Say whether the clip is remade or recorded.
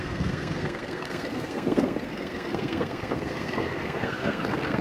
remade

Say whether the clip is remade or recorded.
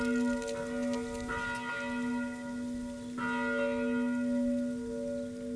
recorded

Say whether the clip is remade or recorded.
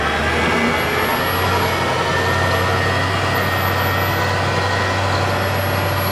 recorded